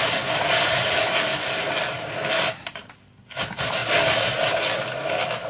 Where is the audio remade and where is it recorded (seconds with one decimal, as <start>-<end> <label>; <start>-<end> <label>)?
0.0-5.5 recorded